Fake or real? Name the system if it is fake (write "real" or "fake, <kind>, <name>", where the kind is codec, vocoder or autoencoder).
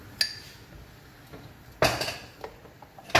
real